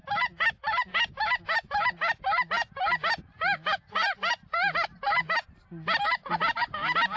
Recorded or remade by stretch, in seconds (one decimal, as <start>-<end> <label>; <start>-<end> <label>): 0.0-7.2 recorded